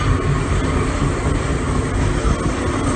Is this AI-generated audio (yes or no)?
no